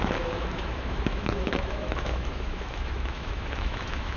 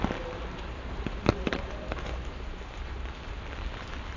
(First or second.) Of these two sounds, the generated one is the first